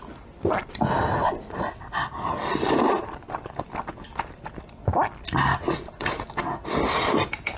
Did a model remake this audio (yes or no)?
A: no